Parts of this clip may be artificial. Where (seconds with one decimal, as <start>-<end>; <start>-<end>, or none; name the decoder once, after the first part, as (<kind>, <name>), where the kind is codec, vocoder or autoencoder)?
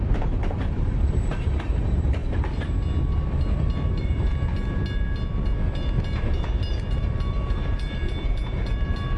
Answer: 0.0-2.2 (vocoder, BigVGAN v2); 3.9-4.3; 6.7-9.2